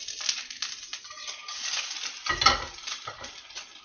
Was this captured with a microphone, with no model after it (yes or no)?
yes